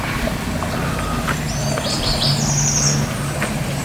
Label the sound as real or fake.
real